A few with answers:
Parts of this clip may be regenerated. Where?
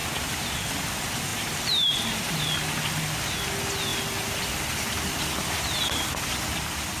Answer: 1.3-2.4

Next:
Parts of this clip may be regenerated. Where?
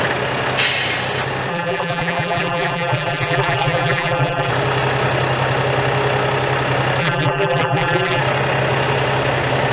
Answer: 1.5-4.5; 7.0-8.2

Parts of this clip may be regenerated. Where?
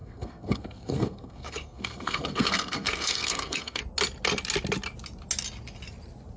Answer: 0.0-3.8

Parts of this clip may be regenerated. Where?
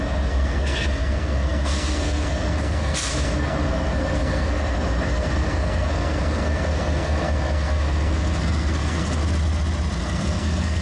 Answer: 0.0-9.2; 10.0-10.8